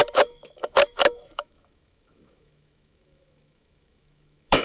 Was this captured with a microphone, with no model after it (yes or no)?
no